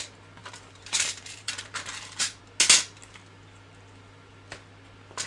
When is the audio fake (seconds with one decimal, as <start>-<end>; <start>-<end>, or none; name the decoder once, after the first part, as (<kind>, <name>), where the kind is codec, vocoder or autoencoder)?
0.4-2.4 (vocoder, BigVGAN v2)